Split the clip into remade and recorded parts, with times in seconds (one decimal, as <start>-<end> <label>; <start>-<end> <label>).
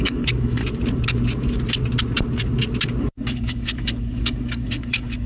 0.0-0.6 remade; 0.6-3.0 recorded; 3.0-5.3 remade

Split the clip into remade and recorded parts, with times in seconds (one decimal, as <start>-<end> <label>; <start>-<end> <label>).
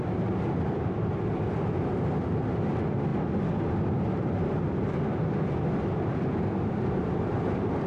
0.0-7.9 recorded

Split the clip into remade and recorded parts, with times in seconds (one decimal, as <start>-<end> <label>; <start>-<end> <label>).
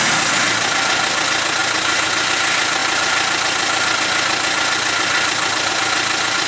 0.0-6.5 recorded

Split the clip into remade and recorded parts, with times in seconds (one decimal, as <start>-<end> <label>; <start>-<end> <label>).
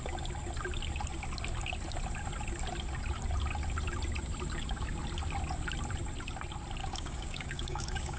0.0-6.8 recorded; 6.8-8.2 remade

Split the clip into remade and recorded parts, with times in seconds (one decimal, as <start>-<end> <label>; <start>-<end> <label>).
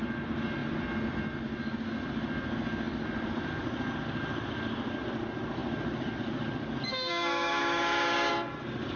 0.0-6.9 recorded; 6.9-8.3 remade; 8.3-9.0 recorded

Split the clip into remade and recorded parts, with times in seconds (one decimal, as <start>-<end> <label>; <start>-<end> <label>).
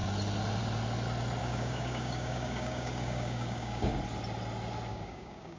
0.0-1.4 recorded; 1.4-3.9 remade; 3.9-4.9 recorded; 4.9-5.6 remade